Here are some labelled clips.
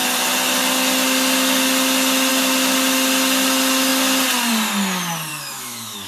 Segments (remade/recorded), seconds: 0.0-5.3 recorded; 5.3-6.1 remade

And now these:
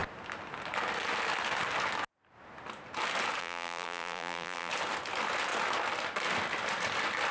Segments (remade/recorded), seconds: 0.0-3.4 recorded; 3.4-4.7 remade; 4.7-7.3 recorded

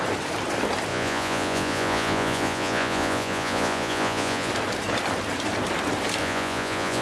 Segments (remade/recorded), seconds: 0.0-0.9 recorded; 0.9-4.5 remade; 4.5-6.2 recorded; 6.2-7.0 remade

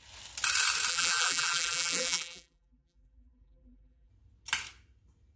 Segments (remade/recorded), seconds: 0.0-0.9 recorded; 0.9-4.1 remade; 4.1-5.4 recorded

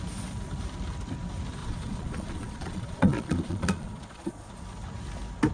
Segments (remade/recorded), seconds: 0.0-1.6 recorded; 1.6-4.5 remade; 4.5-5.5 recorded

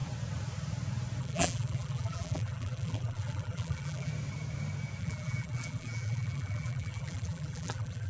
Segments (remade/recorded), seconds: 0.0-1.2 recorded; 1.2-4.1 remade; 4.1-5.0 recorded; 5.0-8.1 remade